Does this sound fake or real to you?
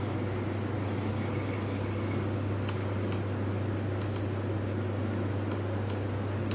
real